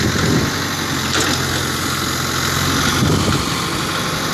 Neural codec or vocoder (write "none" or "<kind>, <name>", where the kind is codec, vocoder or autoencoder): none